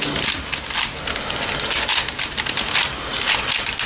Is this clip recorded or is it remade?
recorded